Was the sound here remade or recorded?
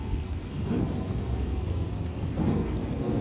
remade